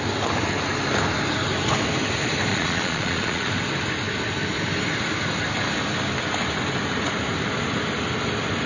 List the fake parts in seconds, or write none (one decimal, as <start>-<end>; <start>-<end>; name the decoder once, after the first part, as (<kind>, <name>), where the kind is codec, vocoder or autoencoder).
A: 2.5-3.5 (vocoder, Vocos)